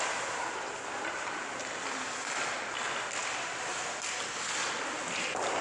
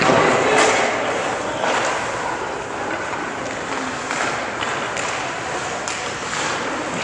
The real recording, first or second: first